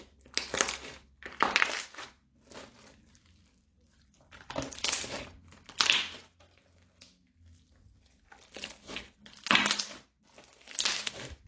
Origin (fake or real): real